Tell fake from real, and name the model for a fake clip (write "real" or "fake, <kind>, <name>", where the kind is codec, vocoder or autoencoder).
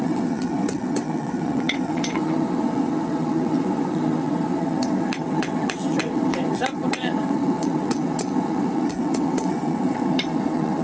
fake, vocoder, WaveNeXt